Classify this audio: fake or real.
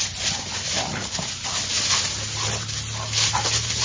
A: real